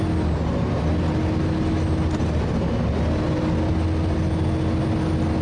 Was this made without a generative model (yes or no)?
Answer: yes